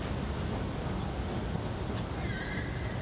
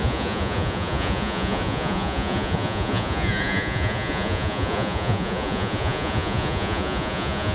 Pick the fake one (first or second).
second